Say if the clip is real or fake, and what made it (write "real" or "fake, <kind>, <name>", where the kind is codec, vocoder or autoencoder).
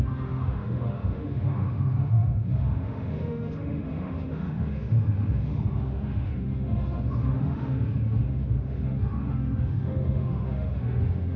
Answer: fake, autoencoder, DAC-VAE